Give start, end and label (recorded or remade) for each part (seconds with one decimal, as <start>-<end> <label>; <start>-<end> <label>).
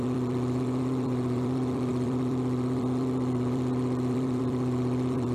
0.0-5.3 remade